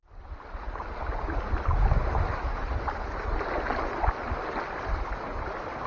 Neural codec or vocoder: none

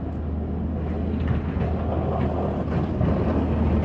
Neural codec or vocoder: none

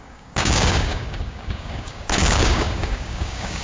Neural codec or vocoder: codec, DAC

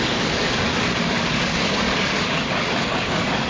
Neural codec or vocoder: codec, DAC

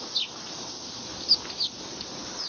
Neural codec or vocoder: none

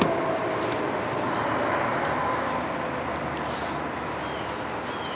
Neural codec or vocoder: none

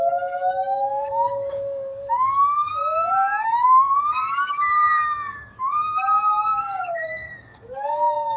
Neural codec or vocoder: codec, DAC